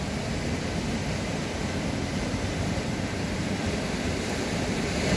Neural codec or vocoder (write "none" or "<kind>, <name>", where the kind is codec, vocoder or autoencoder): none